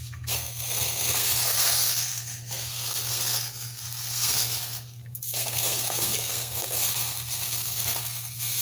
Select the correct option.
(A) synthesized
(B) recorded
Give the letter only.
A